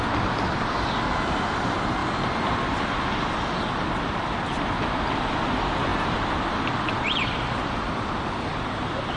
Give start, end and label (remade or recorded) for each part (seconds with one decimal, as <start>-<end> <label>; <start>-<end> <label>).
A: 0.0-2.0 recorded; 2.0-2.8 remade; 2.8-5.9 recorded; 5.9-8.1 remade; 8.1-9.2 recorded

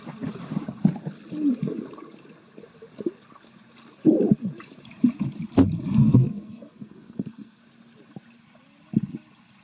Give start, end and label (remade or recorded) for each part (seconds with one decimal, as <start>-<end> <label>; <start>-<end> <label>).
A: 0.0-6.0 recorded; 6.0-7.6 remade; 7.6-9.6 recorded

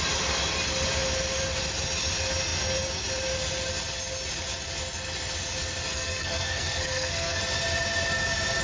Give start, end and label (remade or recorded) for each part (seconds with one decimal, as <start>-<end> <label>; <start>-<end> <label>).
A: 0.0-5.9 recorded; 5.9-7.4 remade; 7.4-8.6 recorded

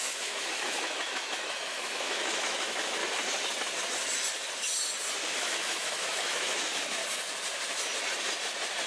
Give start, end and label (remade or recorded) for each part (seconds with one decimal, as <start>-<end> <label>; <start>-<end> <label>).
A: 0.0-3.0 remade; 3.0-5.3 recorded; 5.3-7.0 remade; 7.0-8.9 recorded

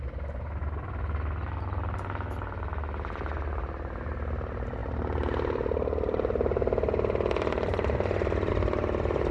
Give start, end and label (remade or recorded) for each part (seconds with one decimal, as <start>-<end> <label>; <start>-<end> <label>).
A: 0.0-9.3 recorded